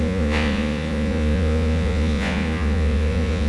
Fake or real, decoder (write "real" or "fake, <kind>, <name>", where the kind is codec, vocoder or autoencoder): fake, vocoder, Vocos